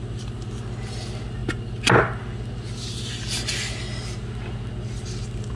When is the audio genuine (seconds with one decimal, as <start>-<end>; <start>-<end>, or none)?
0.0-5.6

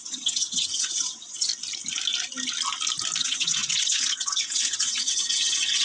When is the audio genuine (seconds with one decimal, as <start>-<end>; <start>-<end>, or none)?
1.5-3.2

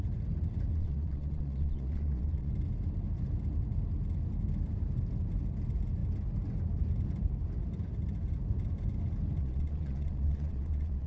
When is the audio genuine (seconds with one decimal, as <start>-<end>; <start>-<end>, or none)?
0.0-0.7; 2.5-9.4

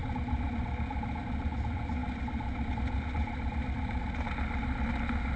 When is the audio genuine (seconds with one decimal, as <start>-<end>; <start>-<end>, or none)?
0.0-5.4

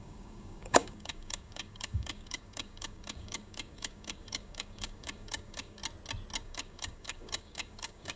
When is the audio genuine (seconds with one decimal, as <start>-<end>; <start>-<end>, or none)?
5.8-6.4

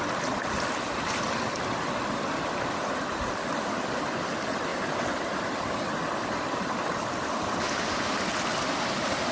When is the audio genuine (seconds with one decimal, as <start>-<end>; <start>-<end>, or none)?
0.0-9.3

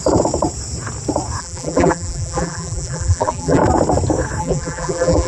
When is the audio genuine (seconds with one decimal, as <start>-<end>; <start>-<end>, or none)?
0.0-1.4; 3.6-4.4

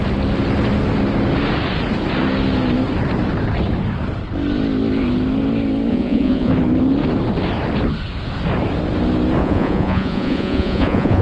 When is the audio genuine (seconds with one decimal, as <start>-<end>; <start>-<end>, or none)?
0.0-5.9; 6.5-9.4